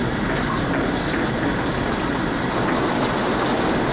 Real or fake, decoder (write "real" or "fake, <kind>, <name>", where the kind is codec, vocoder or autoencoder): real